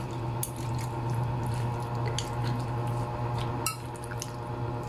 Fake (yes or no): no